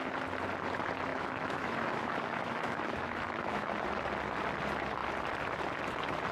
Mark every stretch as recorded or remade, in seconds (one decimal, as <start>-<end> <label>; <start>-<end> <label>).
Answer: 0.0-1.1 recorded; 1.1-3.7 remade; 3.7-6.3 recorded